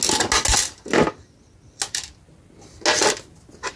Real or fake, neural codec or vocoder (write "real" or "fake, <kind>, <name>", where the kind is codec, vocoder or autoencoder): real